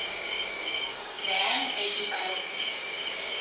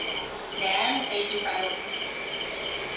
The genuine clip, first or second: second